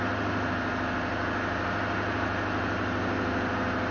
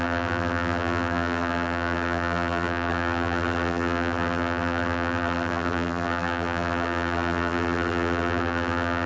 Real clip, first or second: first